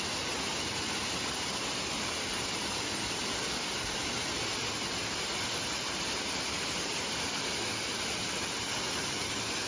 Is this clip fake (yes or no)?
no